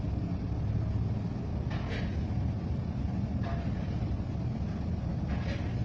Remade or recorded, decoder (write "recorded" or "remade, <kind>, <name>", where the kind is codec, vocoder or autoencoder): recorded